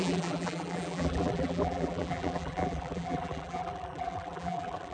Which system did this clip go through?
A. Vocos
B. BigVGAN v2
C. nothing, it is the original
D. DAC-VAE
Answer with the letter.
B